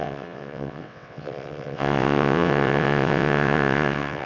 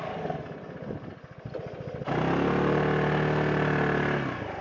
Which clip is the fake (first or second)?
first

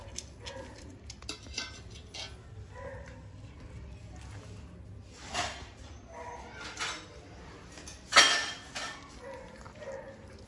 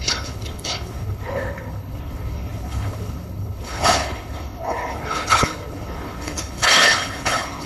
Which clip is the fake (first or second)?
second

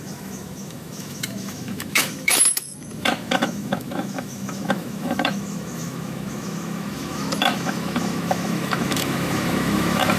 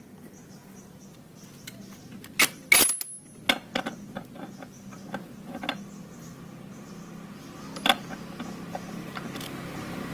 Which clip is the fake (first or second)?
first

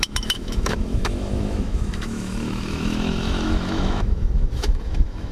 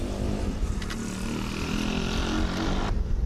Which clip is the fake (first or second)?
first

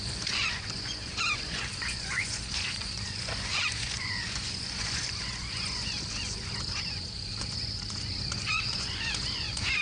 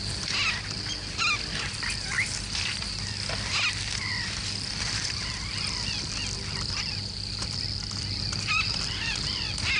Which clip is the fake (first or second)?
first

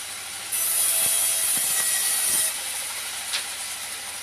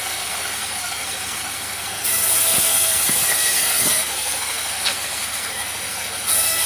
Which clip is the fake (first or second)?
second